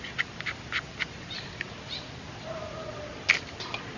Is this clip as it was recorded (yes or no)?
no